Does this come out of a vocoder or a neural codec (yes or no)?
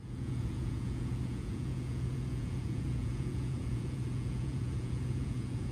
yes